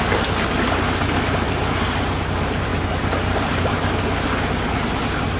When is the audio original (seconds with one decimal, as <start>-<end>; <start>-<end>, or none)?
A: 0.0-5.4